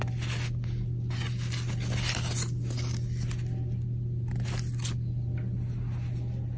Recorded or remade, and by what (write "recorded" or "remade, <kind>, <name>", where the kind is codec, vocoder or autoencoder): recorded